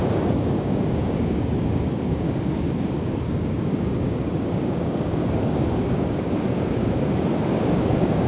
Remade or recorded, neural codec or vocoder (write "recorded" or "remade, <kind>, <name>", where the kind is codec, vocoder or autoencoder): remade, codec, DAC